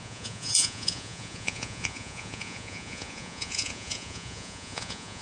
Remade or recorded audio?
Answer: remade